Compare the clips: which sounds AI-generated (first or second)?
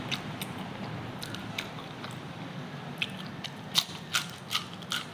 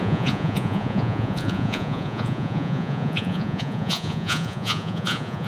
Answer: second